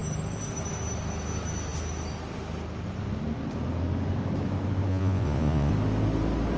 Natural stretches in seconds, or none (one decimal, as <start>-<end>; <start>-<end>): 0.0-4.9; 5.7-6.6